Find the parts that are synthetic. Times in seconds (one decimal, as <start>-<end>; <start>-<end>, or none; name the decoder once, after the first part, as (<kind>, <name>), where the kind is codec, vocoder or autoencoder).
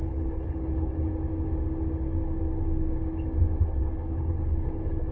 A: 0.0-1.1 (codec, HILCodec); 3.6-5.1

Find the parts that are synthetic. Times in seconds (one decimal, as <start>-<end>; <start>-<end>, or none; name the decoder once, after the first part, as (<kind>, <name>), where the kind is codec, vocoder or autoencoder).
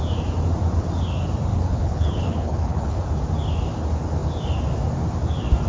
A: 1.5-3.0 (codec, HILCodec)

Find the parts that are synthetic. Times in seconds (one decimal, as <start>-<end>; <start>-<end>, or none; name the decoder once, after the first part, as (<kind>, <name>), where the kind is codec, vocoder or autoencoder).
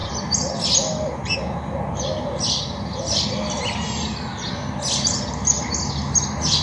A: none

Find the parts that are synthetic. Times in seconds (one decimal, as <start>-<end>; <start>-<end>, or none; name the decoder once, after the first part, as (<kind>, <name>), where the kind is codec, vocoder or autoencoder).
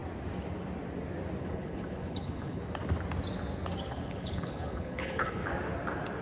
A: 1.4-2.6 (codec, HILCodec); 3.9-5.4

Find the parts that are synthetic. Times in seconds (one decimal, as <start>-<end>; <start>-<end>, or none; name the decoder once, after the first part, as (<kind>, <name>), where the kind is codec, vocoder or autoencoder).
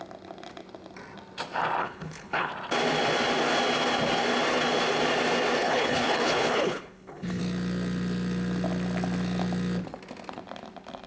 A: 1.8-2.5 (codec, HILCodec); 5.6-7.4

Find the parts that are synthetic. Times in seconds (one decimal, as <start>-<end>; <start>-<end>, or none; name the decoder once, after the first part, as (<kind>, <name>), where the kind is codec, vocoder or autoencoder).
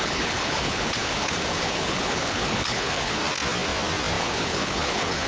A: 0.0-3.2 (codec, HILCodec); 4.2-5.3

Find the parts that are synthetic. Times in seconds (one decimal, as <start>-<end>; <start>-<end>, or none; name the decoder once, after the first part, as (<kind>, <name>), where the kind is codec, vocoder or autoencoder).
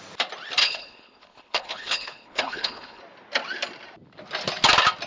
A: 0.6-3.0 (codec, HILCodec)